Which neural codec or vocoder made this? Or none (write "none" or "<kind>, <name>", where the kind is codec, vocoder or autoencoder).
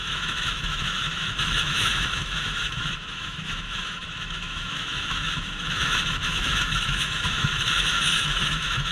autoencoder, DAC-VAE